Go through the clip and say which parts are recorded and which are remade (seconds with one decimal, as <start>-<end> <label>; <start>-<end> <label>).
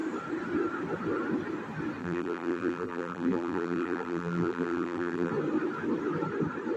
0.0-2.0 recorded; 2.0-5.3 remade; 5.3-6.8 recorded